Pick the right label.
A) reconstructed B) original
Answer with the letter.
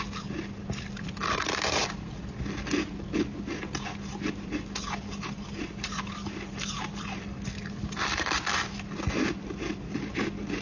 B